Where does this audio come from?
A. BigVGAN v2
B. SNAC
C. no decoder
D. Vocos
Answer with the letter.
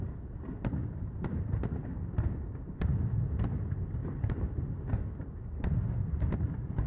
C